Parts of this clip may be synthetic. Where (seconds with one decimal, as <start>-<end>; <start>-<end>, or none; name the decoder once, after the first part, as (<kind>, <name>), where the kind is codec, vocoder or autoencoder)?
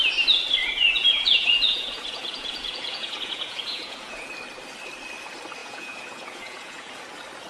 0.6-4.3 (vocoder, Vocos); 5.6-7.0